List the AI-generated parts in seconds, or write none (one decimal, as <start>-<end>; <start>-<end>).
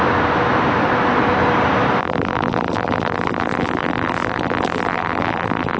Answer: 2.0-5.8